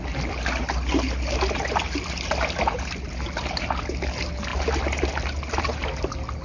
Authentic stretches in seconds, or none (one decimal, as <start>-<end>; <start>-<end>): 0.0-6.4